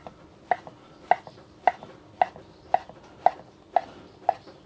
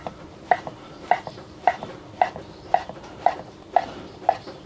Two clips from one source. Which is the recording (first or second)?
first